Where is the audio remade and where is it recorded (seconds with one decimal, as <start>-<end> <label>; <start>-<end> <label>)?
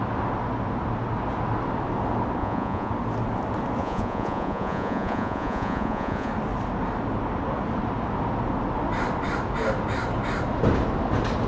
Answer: 0.0-2.4 recorded; 2.4-2.9 remade; 2.9-3.8 recorded; 3.8-6.3 remade; 6.3-11.5 recorded